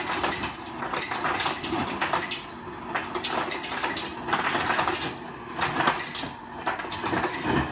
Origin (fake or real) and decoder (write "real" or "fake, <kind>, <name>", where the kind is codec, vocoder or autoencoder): real